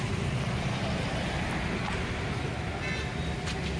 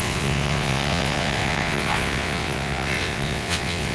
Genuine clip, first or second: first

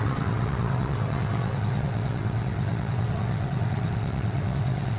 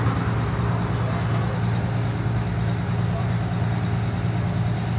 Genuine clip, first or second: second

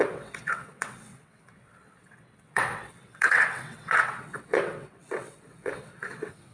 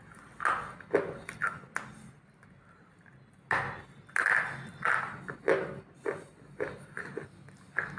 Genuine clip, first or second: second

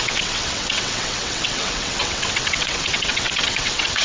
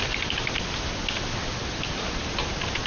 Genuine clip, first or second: second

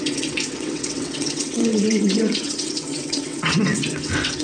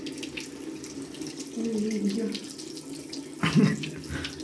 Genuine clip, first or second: second